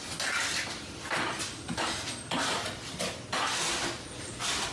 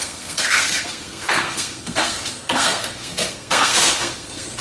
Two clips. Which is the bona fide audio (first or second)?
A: first